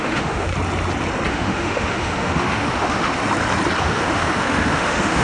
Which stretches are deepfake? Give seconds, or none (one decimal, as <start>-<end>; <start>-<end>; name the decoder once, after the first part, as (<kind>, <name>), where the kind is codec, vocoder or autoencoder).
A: 0.0-0.5 (autoencoder, DAC-VAE); 1.3-3.2; 3.8-5.2